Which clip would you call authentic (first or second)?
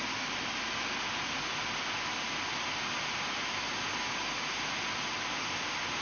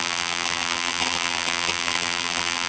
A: first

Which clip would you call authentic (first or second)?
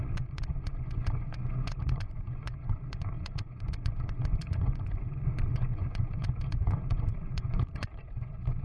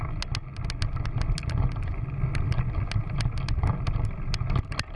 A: second